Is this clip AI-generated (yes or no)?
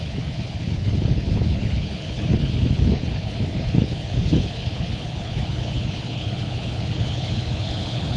yes